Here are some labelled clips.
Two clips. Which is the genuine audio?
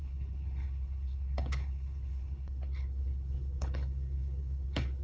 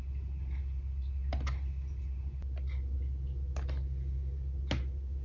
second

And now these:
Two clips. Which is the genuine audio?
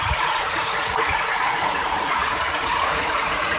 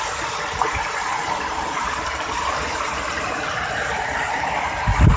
second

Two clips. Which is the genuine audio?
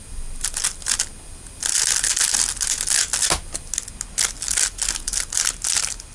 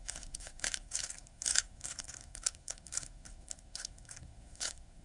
first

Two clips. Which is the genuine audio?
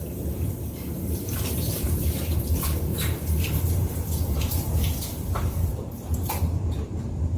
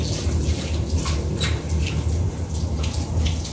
second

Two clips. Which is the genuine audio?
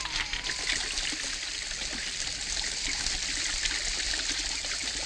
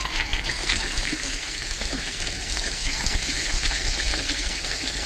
first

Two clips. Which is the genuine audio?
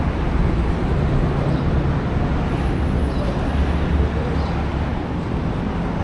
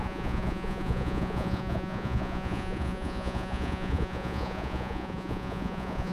first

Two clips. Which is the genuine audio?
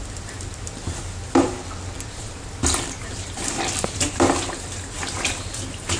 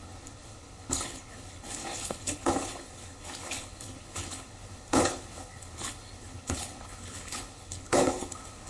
first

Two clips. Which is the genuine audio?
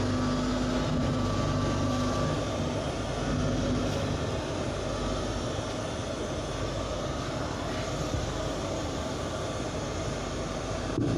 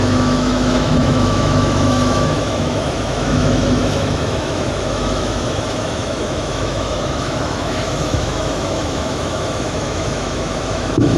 first